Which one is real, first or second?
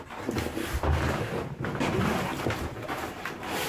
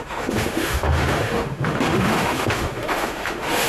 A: first